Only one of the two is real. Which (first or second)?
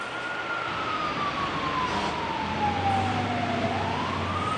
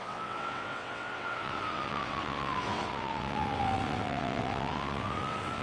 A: first